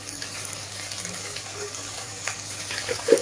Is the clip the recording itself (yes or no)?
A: no